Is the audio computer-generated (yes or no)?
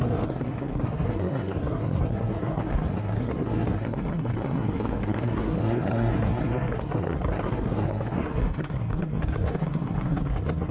yes